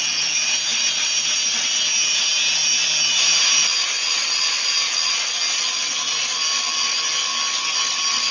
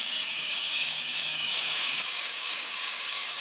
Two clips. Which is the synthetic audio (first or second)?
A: second